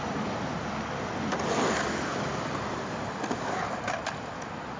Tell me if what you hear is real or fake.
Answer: real